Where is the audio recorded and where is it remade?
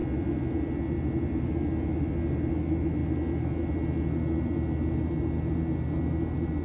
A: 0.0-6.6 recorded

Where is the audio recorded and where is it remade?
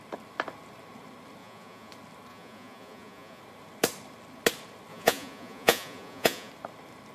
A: 0.0-1.4 recorded; 1.4-1.9 remade; 1.9-2.3 recorded; 2.3-3.4 remade; 3.4-4.9 recorded; 4.9-6.5 remade; 6.5-7.1 recorded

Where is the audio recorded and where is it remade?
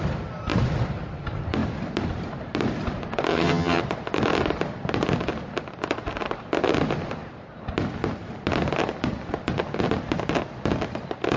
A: 0.0-3.3 recorded; 3.3-3.8 remade; 3.8-11.4 recorded